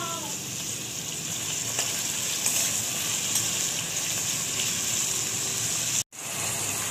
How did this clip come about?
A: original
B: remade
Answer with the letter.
A